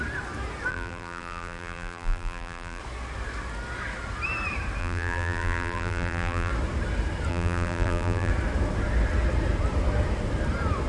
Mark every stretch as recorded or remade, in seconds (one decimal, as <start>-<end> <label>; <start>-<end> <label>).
0.0-0.7 recorded; 0.7-2.8 remade; 2.8-4.8 recorded; 4.8-6.5 remade; 6.5-7.3 recorded; 7.3-8.3 remade; 8.3-10.9 recorded